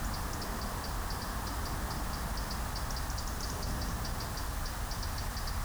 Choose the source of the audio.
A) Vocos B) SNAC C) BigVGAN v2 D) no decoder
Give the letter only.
D